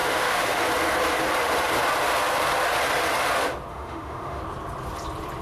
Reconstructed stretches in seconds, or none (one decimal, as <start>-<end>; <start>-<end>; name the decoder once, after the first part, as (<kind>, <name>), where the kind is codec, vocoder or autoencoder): 0.0-0.6 (autoencoder, DAC-VAE); 3.7-4.4